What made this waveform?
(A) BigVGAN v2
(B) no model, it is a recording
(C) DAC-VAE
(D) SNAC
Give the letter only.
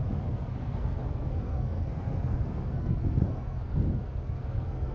D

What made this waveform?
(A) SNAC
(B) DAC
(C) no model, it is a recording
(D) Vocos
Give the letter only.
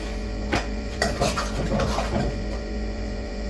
D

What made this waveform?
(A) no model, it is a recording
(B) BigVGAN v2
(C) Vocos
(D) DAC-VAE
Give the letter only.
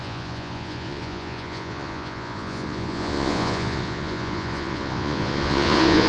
C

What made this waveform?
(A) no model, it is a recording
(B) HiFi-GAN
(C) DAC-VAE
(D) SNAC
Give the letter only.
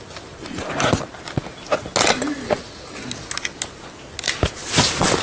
A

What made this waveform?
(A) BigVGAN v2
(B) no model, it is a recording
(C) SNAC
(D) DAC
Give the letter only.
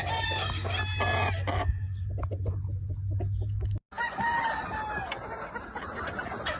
B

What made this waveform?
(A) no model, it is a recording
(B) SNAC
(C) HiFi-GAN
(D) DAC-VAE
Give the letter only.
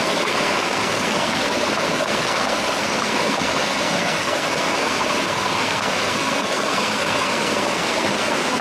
B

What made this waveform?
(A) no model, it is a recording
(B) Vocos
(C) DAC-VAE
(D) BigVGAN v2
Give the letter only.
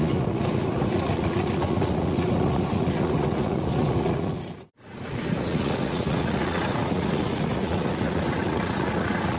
B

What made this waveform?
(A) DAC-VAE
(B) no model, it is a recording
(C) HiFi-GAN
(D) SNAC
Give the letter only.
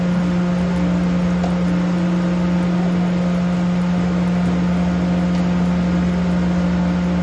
B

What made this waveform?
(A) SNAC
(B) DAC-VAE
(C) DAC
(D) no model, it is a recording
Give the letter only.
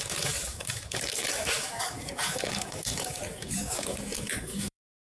C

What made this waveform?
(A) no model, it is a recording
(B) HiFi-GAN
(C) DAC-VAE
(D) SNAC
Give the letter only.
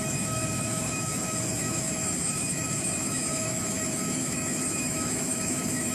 C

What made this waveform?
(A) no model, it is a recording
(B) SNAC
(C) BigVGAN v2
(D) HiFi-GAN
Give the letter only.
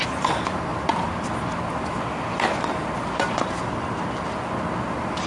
A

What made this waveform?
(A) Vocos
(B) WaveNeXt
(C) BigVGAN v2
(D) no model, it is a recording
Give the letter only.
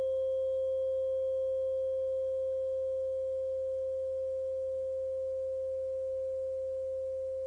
D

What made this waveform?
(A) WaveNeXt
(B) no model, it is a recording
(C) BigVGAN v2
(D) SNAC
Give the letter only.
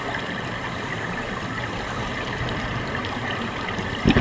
C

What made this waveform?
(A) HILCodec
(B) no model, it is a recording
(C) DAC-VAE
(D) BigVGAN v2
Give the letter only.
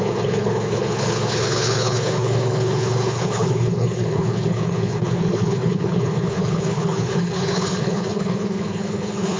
A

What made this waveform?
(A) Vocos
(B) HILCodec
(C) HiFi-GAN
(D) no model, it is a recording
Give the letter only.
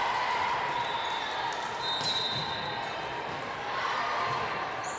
D